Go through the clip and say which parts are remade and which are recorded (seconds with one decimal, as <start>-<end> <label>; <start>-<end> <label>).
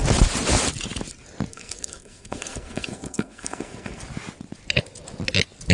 0.0-1.5 recorded; 1.5-4.0 remade; 4.0-5.7 recorded